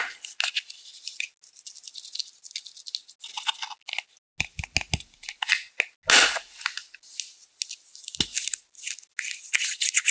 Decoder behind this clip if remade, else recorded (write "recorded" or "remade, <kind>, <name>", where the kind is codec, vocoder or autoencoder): recorded